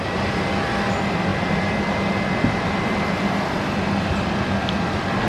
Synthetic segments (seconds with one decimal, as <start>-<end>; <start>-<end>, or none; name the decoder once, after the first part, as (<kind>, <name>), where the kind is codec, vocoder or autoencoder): 1.3-3.9 (vocoder, BigVGAN v2)